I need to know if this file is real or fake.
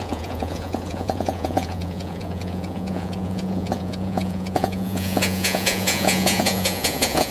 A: fake